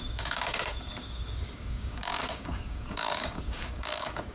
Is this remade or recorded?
remade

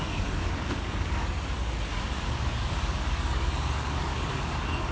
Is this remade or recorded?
remade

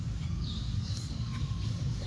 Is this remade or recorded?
remade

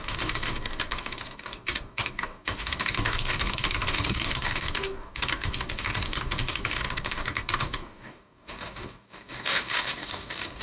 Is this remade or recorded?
remade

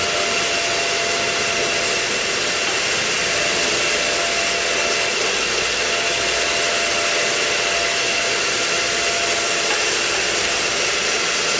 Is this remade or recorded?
recorded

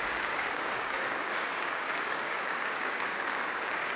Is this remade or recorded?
remade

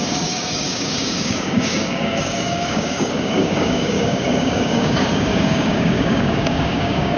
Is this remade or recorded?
remade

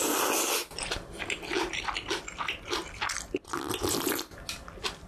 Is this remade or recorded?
recorded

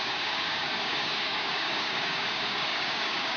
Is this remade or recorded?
remade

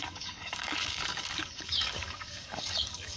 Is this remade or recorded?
remade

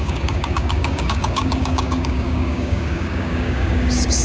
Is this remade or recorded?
remade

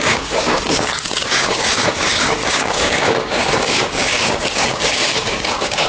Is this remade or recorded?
remade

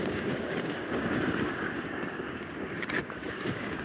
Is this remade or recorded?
remade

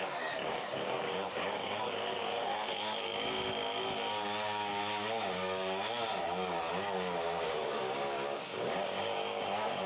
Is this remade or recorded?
remade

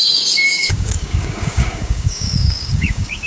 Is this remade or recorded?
remade